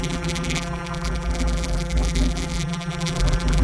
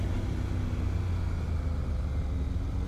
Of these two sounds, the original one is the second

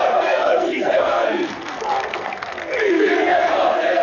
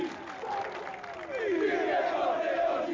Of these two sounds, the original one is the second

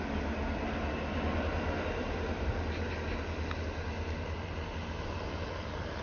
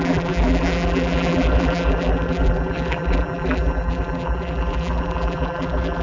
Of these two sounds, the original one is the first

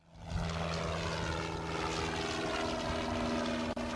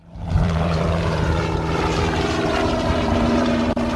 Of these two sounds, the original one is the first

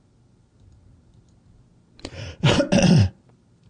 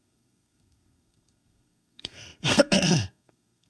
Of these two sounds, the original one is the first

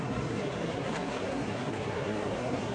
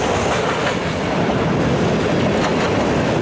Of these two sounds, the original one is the second